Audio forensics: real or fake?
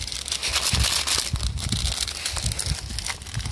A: real